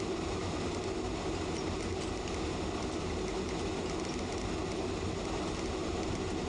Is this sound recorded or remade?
recorded